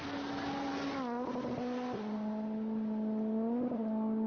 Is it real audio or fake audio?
real